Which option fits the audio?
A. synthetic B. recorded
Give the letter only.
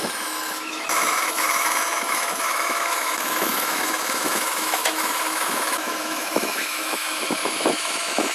A